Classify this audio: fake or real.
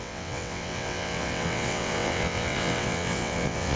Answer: fake